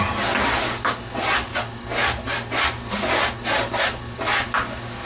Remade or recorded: recorded